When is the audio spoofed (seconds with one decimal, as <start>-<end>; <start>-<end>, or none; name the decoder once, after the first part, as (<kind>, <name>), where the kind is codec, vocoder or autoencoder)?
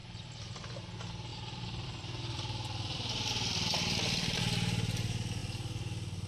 0.0-0.7 (vocoder, BigVGAN v2); 1.3-4.4